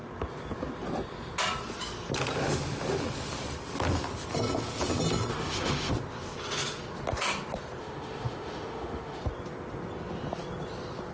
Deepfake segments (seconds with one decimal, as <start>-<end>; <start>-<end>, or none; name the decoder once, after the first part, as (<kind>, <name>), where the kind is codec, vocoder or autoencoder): 5.3-5.9 (autoencoder, DAC-VAE); 7.8-9.2